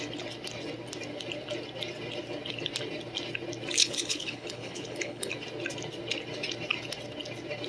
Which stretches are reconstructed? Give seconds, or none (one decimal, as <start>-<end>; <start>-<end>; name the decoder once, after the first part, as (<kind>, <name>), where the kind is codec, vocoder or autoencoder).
3.8-5.3 (codec, HILCodec)